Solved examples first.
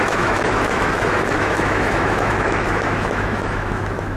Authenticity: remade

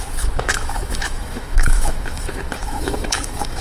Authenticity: remade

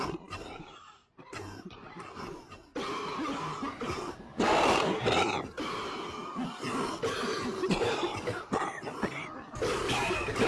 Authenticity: recorded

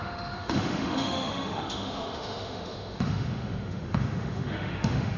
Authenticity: remade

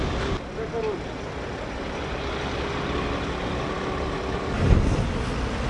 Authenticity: recorded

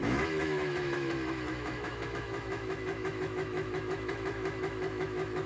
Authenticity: remade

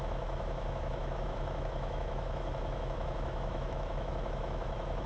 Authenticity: remade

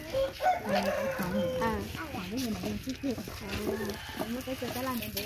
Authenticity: recorded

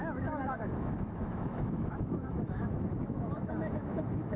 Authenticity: remade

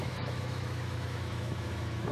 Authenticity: remade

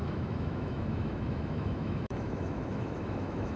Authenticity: remade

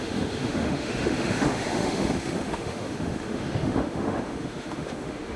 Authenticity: remade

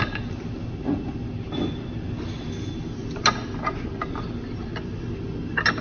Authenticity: recorded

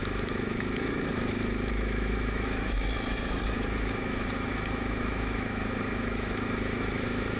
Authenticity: remade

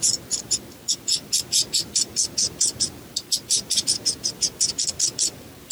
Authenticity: recorded